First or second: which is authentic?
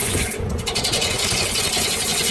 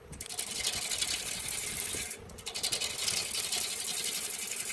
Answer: second